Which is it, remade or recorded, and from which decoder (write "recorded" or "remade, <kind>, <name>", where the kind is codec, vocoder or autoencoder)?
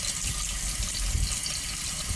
recorded